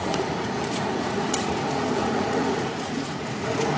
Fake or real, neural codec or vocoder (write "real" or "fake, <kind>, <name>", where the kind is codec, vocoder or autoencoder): fake, vocoder, Vocos